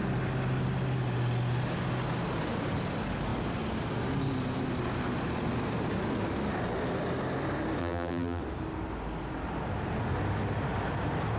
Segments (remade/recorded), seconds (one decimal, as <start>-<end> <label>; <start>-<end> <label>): 0.0-7.8 recorded; 7.8-8.4 remade; 8.4-11.4 recorded